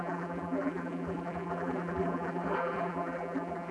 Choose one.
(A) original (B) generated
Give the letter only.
B